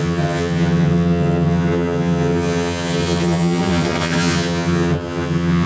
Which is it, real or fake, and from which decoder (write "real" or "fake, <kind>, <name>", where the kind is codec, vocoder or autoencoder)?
fake, vocoder, HiFi-GAN